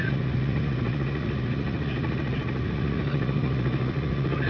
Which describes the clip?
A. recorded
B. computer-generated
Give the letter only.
B